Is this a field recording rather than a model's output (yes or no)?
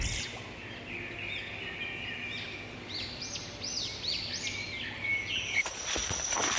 yes